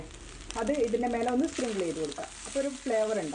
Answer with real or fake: real